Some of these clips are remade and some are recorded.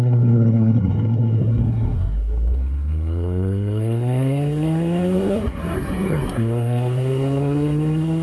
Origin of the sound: remade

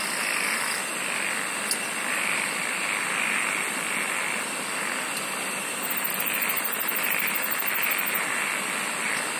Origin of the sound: recorded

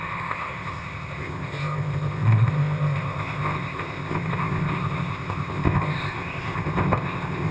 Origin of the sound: remade